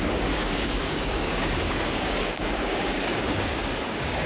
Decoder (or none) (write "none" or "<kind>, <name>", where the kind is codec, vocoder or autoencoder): codec, DAC